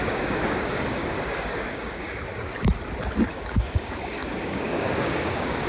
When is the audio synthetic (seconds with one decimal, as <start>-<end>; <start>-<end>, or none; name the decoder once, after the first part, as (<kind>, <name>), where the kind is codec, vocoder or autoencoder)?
0.0-2.3 (codec, DAC); 3.3-5.7